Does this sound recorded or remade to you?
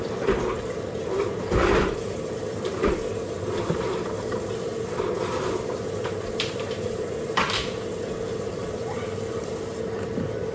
remade